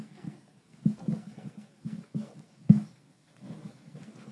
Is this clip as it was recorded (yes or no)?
no